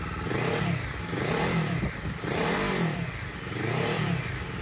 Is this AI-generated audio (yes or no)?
no